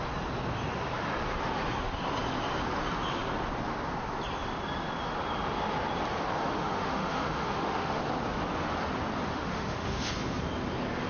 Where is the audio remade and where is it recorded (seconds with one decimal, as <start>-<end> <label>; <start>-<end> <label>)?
0.0-6.4 recorded; 6.4-8.0 remade; 8.0-9.3 recorded; 9.3-10.1 remade; 10.1-11.1 recorded